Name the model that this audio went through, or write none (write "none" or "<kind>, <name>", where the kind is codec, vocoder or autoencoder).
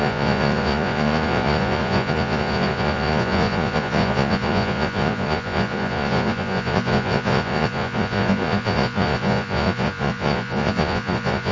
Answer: vocoder, Vocos